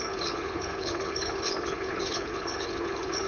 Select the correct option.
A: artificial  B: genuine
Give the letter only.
A